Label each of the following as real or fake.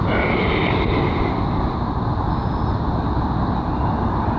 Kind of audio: real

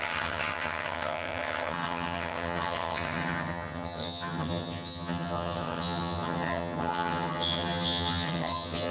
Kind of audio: fake